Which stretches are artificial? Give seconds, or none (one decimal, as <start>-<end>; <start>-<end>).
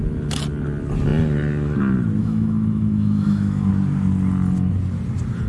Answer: 2.2-3.7